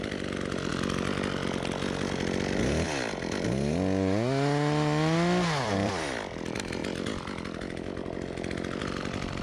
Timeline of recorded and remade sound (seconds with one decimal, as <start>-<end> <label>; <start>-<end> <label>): 0.0-0.7 remade; 0.7-5.6 recorded; 5.6-6.8 remade; 6.8-8.8 recorded; 8.8-9.4 remade